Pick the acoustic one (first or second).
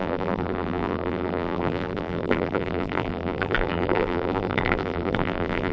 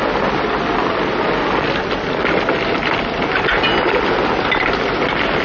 second